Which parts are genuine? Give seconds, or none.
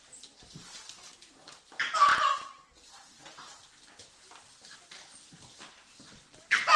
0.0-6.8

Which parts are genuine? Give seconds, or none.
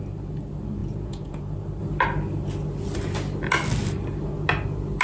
0.0-0.8; 1.4-5.0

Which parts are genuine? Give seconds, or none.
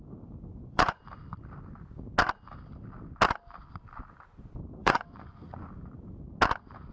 0.0-0.5; 1.0-4.8; 5.7-6.9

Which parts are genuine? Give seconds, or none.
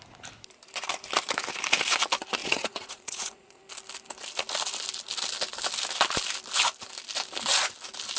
0.0-2.4; 3.6-8.2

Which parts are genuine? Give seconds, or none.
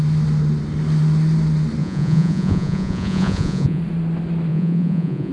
0.0-1.8; 3.8-4.5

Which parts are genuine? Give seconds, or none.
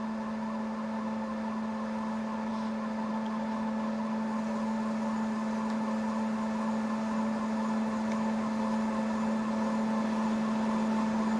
0.0-11.4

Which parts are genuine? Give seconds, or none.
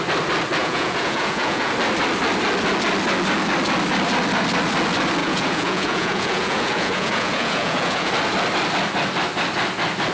0.0-0.6; 1.7-5.2; 8.1-10.1